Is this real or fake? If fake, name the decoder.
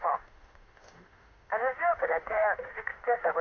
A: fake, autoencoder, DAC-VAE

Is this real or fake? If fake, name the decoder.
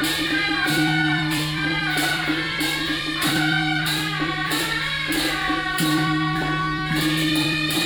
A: fake, vocoder, BigVGAN v2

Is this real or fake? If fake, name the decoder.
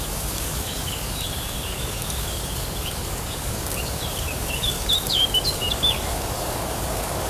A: fake, codec, DAC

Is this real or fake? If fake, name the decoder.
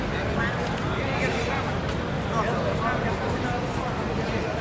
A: real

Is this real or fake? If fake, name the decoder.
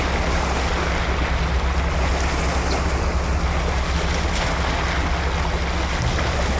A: real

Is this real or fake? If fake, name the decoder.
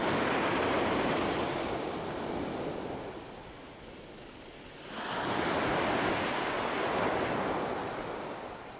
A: real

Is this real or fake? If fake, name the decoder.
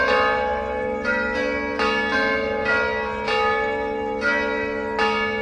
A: real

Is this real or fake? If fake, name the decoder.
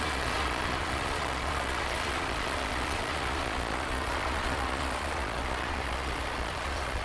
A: fake, vocoder, Vocos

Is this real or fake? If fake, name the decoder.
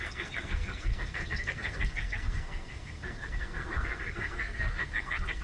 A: fake, codec, SNAC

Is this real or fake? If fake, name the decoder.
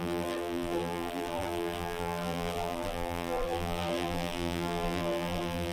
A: fake, vocoder, BigVGAN v2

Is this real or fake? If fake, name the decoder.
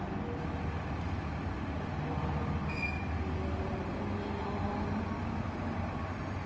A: real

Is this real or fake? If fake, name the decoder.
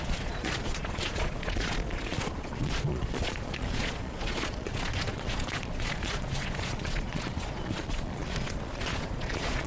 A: fake, vocoder, Vocos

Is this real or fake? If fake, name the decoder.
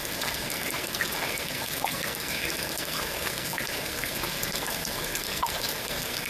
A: fake, codec, SNAC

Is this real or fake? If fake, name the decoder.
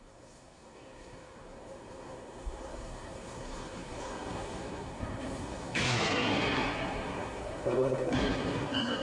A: fake, codec, SNAC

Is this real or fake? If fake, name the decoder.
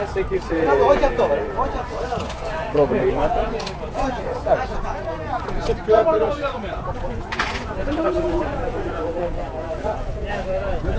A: fake, vocoder, Vocos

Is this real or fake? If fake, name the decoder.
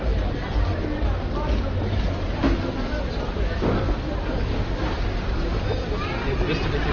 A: real